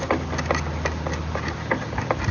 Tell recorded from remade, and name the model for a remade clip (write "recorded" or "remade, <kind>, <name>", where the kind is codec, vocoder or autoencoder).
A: recorded